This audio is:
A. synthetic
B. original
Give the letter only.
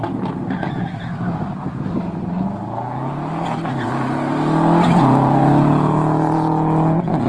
B